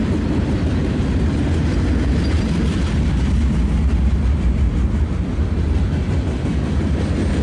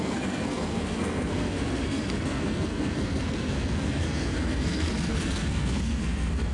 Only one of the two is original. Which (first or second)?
first